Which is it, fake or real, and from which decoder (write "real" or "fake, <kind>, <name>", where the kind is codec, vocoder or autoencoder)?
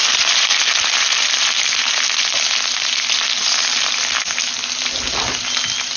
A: real